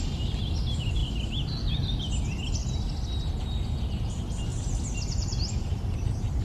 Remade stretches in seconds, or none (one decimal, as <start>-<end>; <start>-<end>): 1.0-1.7